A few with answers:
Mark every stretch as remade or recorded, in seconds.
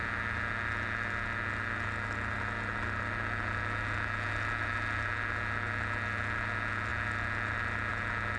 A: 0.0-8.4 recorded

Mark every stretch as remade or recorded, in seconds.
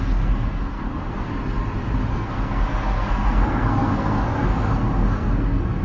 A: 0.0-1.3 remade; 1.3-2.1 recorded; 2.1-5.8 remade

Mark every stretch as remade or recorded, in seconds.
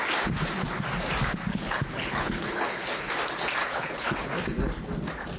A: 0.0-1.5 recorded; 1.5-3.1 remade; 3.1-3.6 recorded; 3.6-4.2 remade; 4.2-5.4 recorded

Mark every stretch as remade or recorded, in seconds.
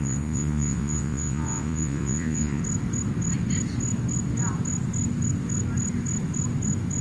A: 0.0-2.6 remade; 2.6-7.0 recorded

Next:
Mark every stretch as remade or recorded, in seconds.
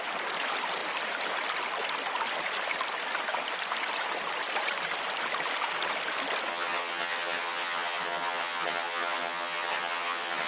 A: 0.0-6.5 recorded; 6.5-10.5 remade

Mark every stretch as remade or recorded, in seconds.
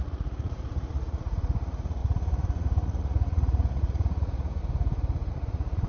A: 0.0-4.6 remade; 4.6-5.3 recorded; 5.3-5.9 remade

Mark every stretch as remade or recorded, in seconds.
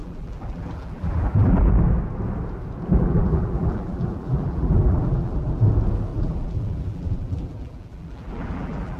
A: 0.0-1.7 remade; 1.7-3.0 recorded; 3.0-5.6 remade; 5.6-6.1 recorded; 6.1-9.0 remade